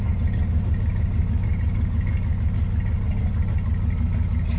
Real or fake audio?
real